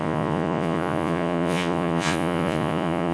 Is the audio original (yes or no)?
no